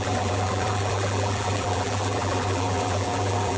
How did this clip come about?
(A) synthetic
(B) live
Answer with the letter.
A